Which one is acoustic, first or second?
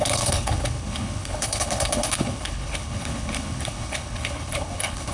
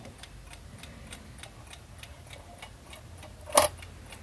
second